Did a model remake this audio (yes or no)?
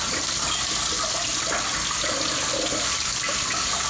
no